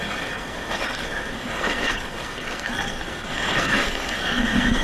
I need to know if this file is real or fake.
fake